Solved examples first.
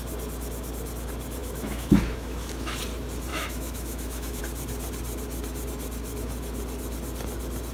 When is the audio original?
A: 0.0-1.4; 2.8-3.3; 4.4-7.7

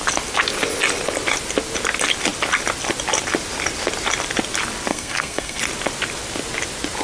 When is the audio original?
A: 0.0-4.9; 5.6-7.0

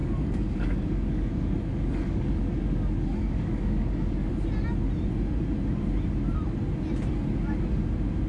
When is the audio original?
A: 4.3-8.3

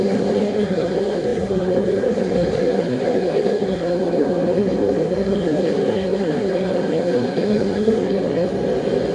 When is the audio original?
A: 8.5-9.1

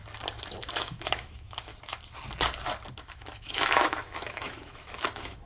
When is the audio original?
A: 0.0-0.6; 1.7-2.9

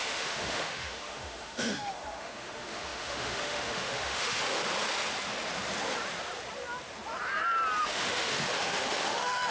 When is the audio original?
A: 4.6-7.8

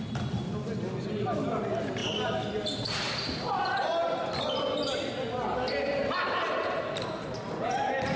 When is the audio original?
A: 0.0-8.2